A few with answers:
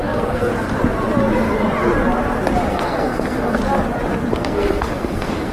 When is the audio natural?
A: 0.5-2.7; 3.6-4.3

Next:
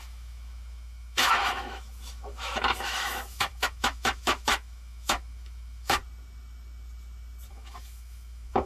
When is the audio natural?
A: 6.0-7.5

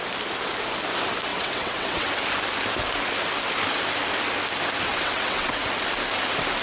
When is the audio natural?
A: 0.0-1.3; 2.1-4.9; 5.5-6.6

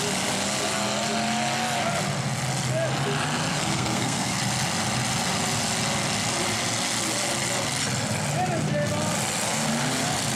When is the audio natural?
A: 0.0-3.5; 4.4-10.4

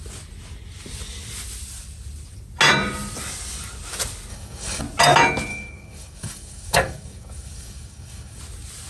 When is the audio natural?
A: 0.0-4.3; 4.8-5.5; 8.4-8.9

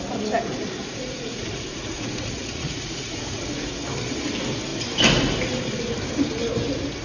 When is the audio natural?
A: 0.0-0.8; 3.4-7.0

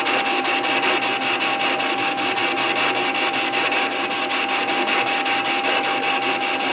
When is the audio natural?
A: 0.0-6.7